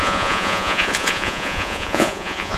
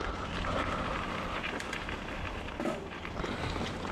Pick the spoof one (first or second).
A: first